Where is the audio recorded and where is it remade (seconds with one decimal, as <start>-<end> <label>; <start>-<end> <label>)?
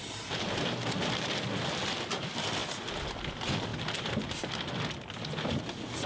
0.0-6.1 recorded